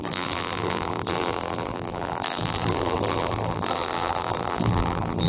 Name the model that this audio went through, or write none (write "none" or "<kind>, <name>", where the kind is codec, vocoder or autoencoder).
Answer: vocoder, BigVGAN v2